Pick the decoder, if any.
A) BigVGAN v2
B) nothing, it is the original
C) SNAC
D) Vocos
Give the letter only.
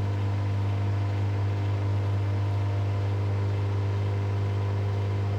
B